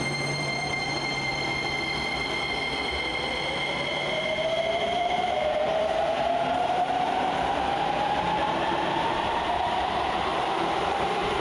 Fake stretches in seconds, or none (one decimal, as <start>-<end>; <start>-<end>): 0.0-1.3; 3.9-11.4